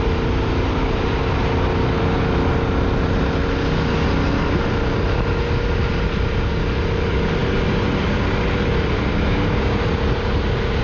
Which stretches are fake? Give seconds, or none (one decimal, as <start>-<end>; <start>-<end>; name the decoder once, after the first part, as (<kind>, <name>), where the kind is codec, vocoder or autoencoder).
9.1-9.8 (codec, DAC)